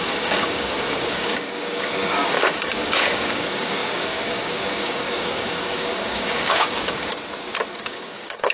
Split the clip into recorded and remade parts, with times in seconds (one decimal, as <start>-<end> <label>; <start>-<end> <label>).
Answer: 0.0-7.1 remade; 7.1-7.7 recorded; 7.7-8.5 remade